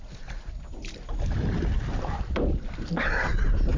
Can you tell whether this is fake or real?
real